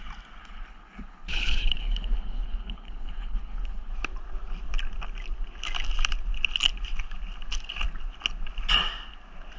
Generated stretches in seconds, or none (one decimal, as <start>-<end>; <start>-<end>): 0.4-3.9